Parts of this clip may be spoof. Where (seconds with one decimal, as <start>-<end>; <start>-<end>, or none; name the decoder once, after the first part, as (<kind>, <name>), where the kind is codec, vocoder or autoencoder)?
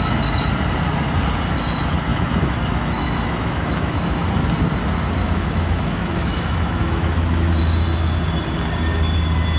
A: 2.1-4.3 (autoencoder, DAC-VAE); 5.2-7.6